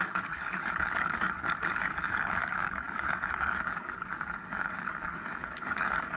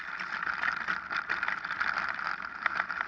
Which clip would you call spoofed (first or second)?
first